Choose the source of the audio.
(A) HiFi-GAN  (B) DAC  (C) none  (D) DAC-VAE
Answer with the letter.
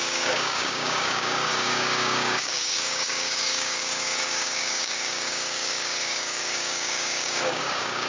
B